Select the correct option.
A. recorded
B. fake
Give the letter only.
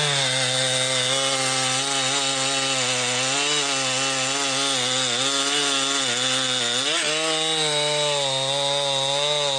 A